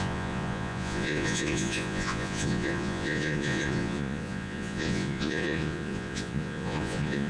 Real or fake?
fake